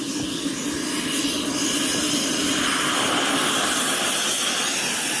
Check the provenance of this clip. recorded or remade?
recorded